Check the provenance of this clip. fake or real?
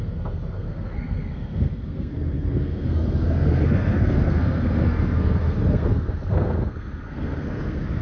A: fake